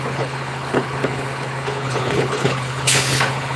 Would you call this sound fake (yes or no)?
yes